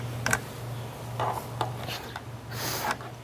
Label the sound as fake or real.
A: real